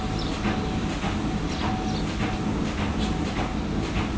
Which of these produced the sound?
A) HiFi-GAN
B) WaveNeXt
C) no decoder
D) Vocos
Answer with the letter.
C